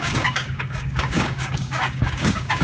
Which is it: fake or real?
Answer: fake